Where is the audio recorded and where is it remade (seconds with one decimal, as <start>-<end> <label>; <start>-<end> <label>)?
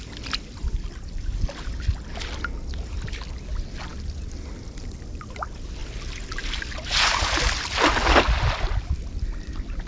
0.0-0.6 recorded; 0.6-1.4 remade; 1.4-9.9 recorded